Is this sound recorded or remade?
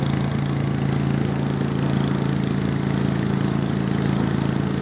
recorded